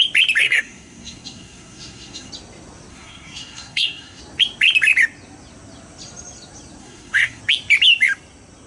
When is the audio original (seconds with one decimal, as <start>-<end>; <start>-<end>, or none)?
0.0-0.4; 2.3-2.9; 4.2-6.8; 7.4-8.7